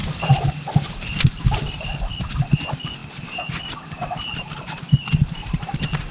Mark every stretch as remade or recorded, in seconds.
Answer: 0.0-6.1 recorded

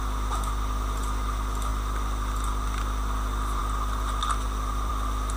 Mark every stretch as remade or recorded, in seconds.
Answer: 0.0-5.4 recorded